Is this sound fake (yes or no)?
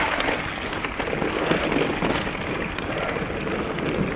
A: no